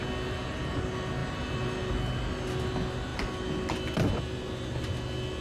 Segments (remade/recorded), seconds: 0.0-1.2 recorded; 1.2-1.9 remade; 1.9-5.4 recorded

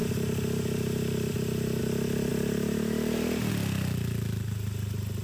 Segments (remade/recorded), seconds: 0.0-1.8 remade; 1.8-2.3 recorded; 2.3-3.5 remade; 3.5-5.2 recorded

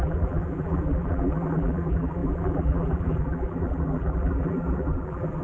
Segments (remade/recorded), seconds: 0.0-5.4 remade

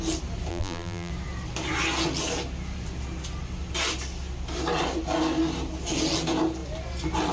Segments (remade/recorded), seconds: 0.0-0.5 recorded; 0.5-1.1 remade; 1.1-7.3 recorded

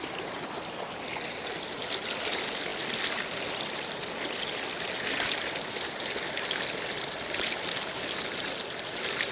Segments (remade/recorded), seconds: 0.0-9.3 recorded

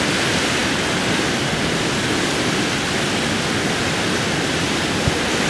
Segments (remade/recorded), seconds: 0.0-5.5 recorded

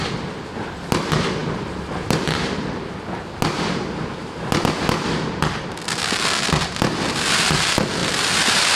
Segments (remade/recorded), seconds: 0.0-8.8 recorded

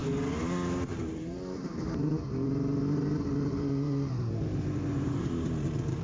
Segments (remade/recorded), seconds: 0.0-0.9 recorded; 0.9-6.0 remade